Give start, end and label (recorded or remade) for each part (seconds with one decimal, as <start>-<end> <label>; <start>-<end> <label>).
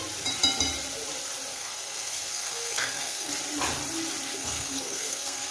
0.0-1.5 recorded; 1.5-3.3 remade; 3.3-4.3 recorded; 4.3-5.5 remade